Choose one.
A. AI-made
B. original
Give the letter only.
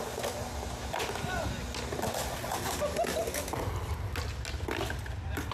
B